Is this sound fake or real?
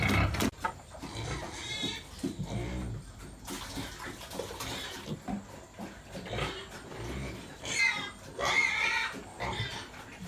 real